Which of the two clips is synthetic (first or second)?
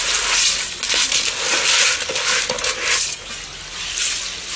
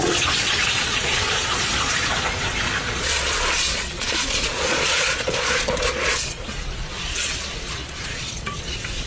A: second